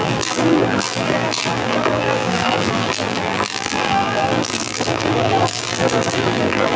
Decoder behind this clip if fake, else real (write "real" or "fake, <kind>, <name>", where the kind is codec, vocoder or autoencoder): fake, vocoder, BigVGAN v2